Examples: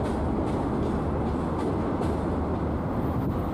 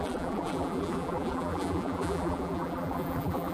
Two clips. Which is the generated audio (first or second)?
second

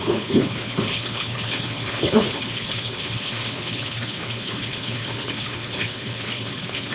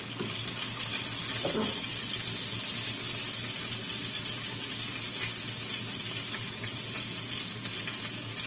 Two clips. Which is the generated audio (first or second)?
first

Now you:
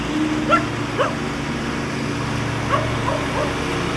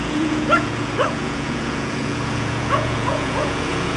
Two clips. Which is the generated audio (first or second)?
second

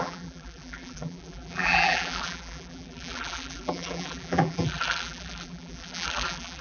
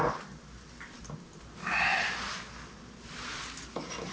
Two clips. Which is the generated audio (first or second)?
first